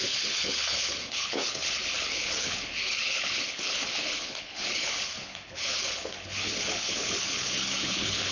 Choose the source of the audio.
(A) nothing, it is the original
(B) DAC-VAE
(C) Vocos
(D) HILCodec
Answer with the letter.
D